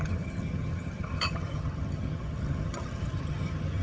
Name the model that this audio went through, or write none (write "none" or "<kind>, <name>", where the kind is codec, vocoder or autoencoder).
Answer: vocoder, HiFi-GAN